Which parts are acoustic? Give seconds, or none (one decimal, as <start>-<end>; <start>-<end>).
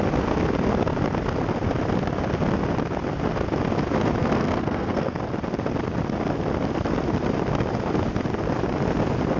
0.0-4.2; 5.2-9.4